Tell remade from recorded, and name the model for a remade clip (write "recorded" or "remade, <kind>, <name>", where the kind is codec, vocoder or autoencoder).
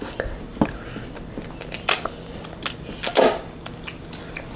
recorded